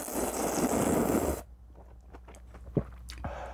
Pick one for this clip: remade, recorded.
recorded